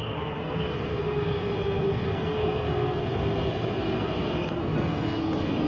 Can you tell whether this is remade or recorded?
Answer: remade